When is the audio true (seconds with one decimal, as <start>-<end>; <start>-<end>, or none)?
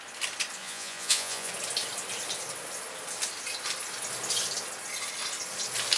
0.0-0.6; 1.5-6.0